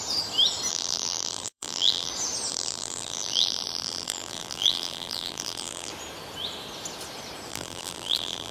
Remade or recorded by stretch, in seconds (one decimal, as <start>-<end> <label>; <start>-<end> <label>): 0.0-0.7 recorded; 0.7-2.1 remade; 2.1-2.5 recorded; 2.5-5.9 remade; 5.9-7.5 recorded; 7.5-8.5 remade